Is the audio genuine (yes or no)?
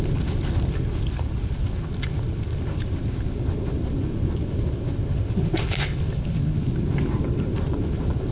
yes